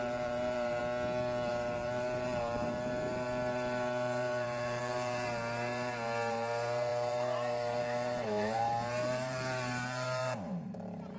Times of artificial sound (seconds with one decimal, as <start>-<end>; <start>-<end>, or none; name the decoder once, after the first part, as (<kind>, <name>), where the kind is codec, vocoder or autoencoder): 0.0-0.8 (vocoder, BigVGAN v2); 1.5-11.2